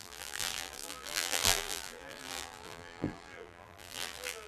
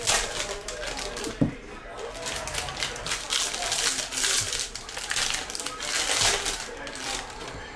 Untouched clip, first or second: second